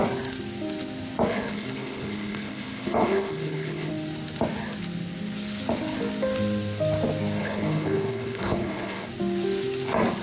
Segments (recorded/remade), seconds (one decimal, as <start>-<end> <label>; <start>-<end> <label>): 0.0-1.3 recorded; 1.3-3.9 remade; 3.9-7.4 recorded; 7.4-9.1 remade; 9.1-10.2 recorded